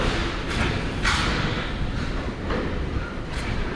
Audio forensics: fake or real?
real